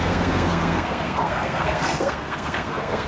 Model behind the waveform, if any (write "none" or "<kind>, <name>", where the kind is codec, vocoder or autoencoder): codec, SNAC